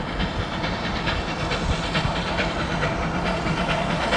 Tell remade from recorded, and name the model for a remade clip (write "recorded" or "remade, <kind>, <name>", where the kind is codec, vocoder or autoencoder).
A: recorded